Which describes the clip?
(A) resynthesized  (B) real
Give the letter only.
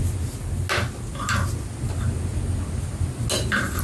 B